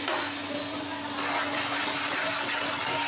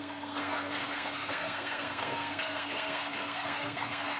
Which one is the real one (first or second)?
first